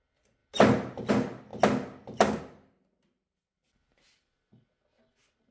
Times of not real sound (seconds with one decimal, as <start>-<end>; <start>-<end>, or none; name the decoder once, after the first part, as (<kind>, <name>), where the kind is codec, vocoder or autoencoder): none